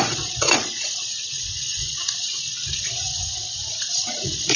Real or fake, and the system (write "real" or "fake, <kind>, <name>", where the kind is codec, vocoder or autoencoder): fake, vocoder, Vocos